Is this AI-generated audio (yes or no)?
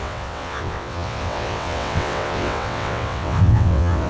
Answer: yes